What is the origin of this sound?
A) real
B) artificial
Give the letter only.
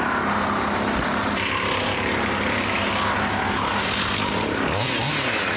A